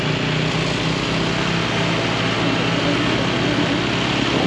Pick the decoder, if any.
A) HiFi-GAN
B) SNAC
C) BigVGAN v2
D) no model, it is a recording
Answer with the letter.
D